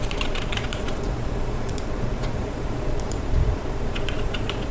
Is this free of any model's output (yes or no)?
no